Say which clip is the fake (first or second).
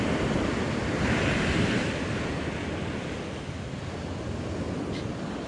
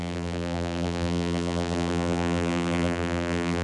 second